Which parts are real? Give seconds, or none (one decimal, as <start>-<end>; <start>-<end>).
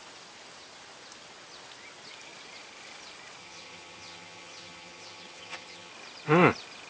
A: 0.0-3.4; 5.9-6.9